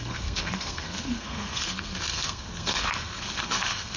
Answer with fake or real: fake